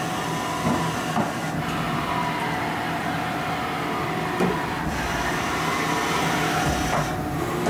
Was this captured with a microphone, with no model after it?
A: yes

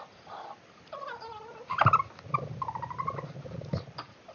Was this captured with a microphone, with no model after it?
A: yes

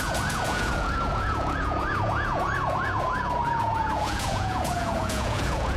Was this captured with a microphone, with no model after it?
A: no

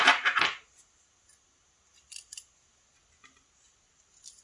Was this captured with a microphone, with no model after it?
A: yes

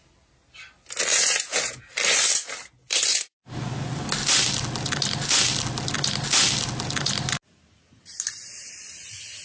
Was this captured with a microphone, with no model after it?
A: yes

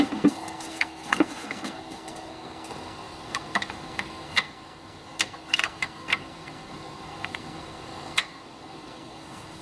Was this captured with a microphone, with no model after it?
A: no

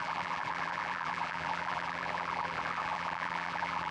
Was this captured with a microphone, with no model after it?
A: no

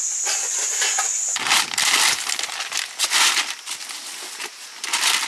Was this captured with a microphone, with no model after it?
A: yes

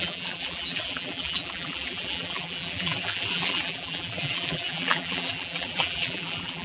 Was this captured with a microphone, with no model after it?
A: no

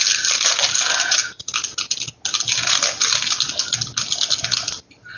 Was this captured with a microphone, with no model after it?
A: yes